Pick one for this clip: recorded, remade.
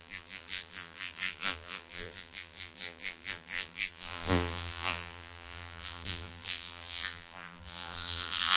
remade